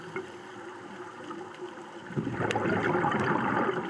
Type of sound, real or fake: real